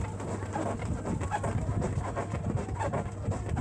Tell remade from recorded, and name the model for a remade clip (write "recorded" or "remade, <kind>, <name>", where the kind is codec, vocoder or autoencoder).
recorded